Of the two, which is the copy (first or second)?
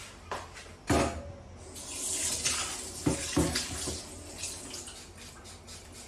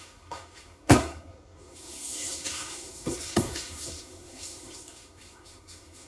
second